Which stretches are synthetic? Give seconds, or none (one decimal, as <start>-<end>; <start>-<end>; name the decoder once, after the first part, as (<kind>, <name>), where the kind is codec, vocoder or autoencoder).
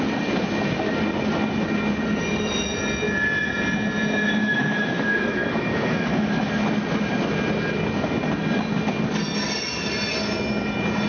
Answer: 4.4-6.5 (autoencoder, DAC-VAE)